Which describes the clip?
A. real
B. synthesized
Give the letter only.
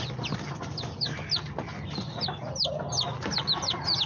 A